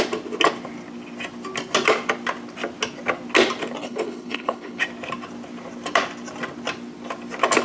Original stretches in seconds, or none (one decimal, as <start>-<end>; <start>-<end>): 0.0-3.8; 4.8-7.6